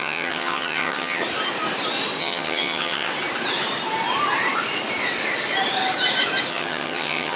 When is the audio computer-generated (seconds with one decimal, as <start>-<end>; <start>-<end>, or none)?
0.0-1.2; 2.2-3.1; 6.5-7.4